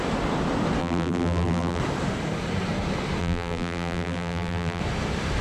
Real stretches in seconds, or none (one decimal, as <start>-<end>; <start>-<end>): 0.0-0.8; 1.8-3.2; 4.8-5.4